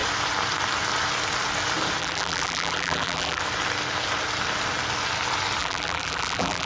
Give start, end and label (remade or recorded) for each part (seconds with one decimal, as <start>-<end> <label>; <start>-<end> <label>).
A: 0.0-2.0 recorded; 2.0-3.4 remade; 3.4-5.6 recorded; 5.6-6.7 remade